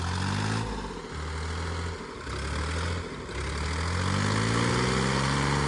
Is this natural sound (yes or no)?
yes